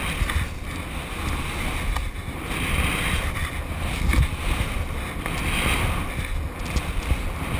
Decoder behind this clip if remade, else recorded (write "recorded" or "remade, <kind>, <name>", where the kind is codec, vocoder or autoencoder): recorded